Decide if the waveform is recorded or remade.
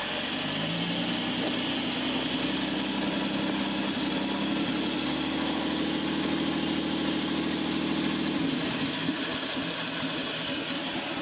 recorded